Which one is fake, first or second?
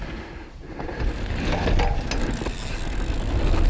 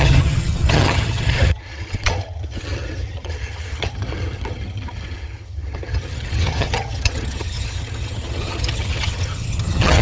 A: second